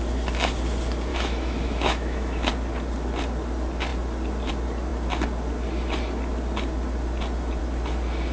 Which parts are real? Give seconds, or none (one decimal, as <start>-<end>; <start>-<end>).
0.0-1.1; 2.5-8.3